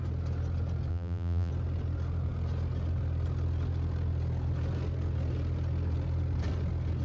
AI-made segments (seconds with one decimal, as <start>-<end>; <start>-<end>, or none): 0.9-1.5